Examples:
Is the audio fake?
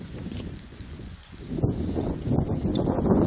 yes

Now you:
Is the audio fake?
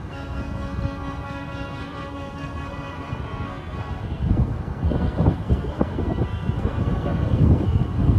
yes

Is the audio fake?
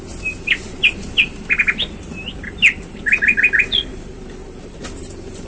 no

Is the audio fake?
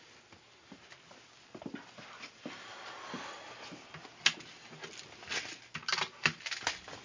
no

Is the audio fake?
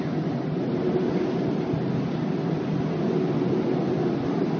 no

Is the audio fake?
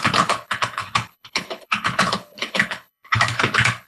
yes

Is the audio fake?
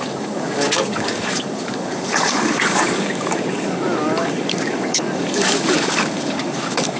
yes